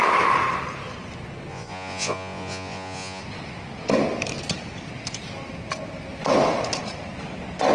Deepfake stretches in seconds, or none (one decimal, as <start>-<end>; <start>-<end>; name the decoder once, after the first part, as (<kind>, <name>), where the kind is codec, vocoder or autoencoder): 1.5-3.2 (vocoder, Vocos)